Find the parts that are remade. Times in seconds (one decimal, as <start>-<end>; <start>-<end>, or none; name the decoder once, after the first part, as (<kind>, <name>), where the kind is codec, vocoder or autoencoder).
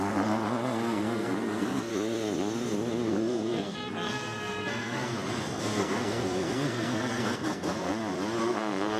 0.0-1.9 (codec, SNAC); 3.1-5.1; 5.6-7.9; 8.4-9.0